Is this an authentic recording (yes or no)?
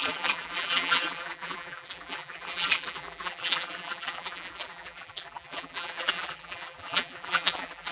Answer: no